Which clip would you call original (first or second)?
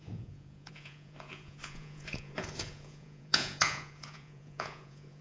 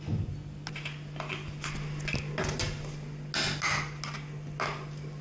second